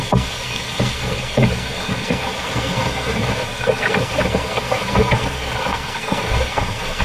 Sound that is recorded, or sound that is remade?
remade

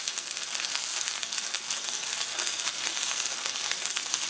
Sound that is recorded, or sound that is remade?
remade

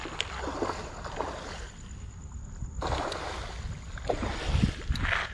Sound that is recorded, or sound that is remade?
recorded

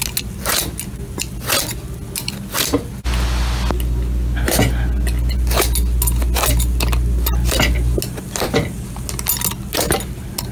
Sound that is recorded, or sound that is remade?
recorded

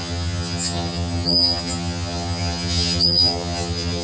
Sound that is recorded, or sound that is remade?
remade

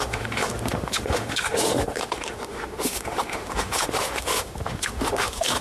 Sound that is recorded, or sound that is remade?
remade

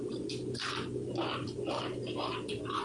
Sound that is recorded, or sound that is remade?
recorded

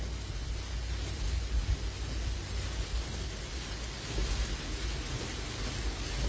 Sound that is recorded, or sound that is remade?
recorded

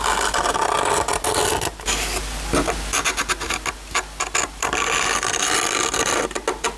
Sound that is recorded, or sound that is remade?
recorded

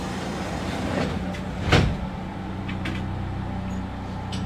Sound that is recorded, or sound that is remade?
recorded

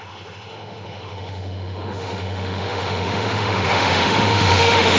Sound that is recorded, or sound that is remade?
remade